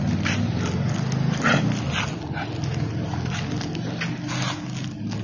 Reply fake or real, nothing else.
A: real